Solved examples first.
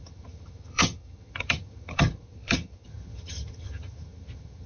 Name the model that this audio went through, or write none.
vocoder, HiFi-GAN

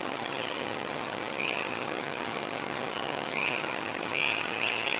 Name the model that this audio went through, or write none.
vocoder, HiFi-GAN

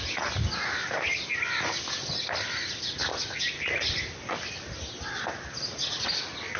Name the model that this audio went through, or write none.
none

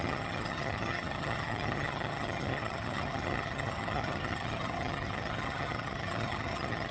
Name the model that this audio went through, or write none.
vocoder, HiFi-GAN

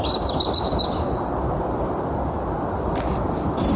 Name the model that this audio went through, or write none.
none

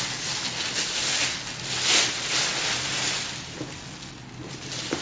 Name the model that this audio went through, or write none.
none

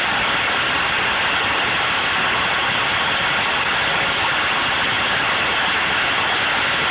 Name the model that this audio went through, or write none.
none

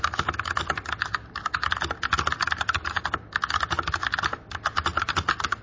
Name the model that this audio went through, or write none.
none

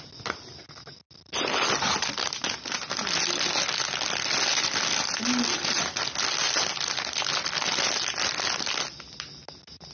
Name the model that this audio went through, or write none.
none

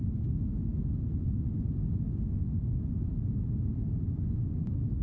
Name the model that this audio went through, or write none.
none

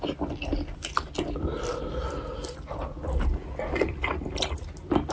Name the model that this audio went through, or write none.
none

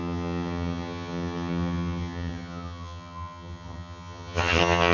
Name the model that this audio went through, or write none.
vocoder, HiFi-GAN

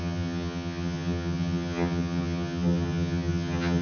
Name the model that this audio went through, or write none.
vocoder, HiFi-GAN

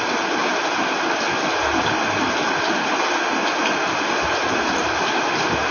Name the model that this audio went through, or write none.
none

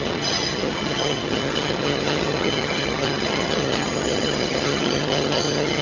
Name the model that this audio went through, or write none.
vocoder, HiFi-GAN